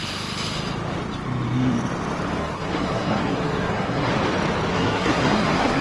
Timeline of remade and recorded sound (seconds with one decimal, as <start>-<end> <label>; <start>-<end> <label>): 0.0-2.4 recorded; 2.4-4.1 remade; 4.1-4.7 recorded; 4.7-5.8 remade